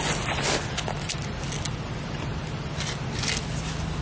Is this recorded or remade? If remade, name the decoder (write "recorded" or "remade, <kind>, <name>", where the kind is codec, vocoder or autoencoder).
recorded